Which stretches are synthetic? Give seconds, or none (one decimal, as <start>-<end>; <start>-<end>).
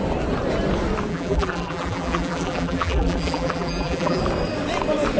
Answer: 1.1-4.2